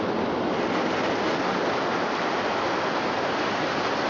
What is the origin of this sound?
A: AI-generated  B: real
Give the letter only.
B